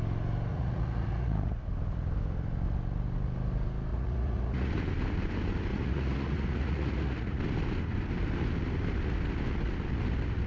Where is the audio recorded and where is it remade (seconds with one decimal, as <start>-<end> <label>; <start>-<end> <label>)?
0.0-0.5 recorded; 0.5-1.6 remade; 1.6-3.9 recorded; 3.9-4.7 remade; 4.7-5.7 recorded; 5.7-7.4 remade; 7.4-10.5 recorded